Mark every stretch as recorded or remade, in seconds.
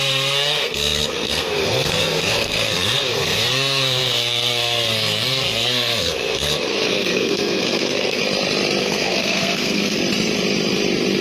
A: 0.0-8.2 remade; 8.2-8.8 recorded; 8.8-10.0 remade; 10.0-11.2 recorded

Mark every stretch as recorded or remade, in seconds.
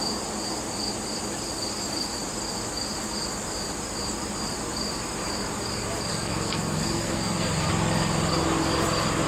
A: 0.0-6.1 recorded; 6.1-7.7 remade; 7.7-9.3 recorded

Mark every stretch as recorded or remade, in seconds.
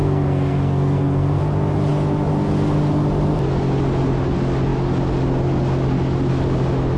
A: 0.0-1.4 remade; 1.4-7.0 recorded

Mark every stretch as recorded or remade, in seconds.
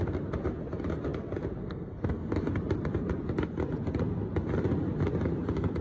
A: 0.0-1.6 recorded; 1.6-2.3 remade; 2.3-5.8 recorded